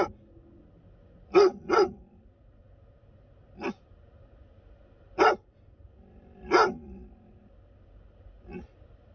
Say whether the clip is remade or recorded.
recorded